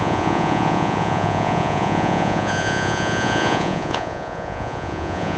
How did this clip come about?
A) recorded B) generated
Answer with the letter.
B